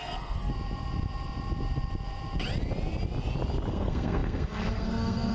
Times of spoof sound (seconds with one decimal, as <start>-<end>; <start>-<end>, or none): 0.0-0.5; 3.7-5.3